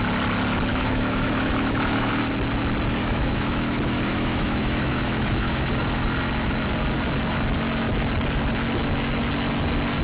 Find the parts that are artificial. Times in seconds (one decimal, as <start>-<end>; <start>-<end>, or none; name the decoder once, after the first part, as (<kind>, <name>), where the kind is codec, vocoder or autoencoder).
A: 0.7-2.1 (autoencoder, DAC-VAE); 3.0-5.7